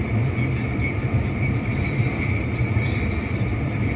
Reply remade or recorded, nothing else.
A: recorded